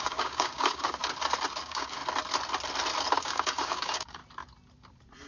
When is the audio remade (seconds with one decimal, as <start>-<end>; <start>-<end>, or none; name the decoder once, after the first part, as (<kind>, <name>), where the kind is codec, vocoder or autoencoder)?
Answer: 0.0-1.0 (codec, DAC); 1.6-2.0; 3.2-4.2